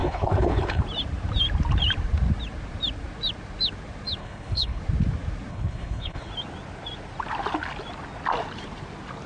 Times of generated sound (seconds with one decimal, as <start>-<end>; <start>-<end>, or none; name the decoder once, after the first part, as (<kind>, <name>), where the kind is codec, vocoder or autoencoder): 0.0-0.8 (codec, HILCodec); 4.2-4.8; 5.5-6.3